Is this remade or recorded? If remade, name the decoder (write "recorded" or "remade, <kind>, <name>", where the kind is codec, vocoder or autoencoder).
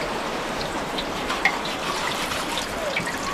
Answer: remade, vocoder, BigVGAN v2